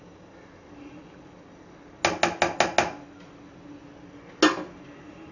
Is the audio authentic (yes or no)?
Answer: yes